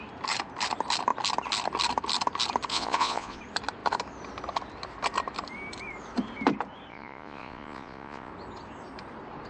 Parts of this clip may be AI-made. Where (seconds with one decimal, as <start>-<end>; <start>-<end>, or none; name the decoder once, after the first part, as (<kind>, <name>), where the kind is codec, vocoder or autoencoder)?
2.7-3.4 (vocoder, Vocos); 6.9-8.3